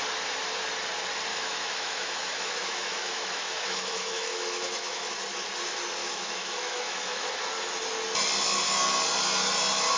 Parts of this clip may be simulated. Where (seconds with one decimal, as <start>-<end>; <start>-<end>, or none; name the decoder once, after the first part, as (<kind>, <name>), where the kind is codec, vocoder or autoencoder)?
1.3-5.1 (autoencoder, DAC-VAE); 6.0-7.3